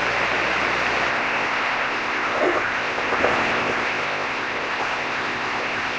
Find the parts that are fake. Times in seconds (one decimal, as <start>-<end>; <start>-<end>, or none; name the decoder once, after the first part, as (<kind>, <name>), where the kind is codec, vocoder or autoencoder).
1.1-6.0 (codec, ZipCodec)